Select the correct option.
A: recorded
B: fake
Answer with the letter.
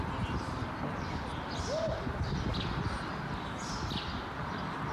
A